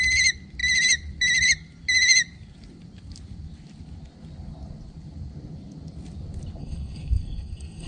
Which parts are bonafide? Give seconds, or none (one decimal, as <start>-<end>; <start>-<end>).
0.0-6.6